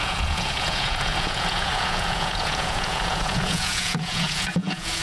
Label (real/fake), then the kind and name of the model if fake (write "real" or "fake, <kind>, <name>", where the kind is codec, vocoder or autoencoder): fake, vocoder, Vocos